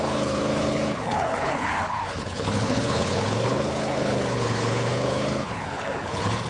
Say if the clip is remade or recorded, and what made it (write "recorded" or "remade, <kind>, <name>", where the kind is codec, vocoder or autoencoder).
remade, codec, HILCodec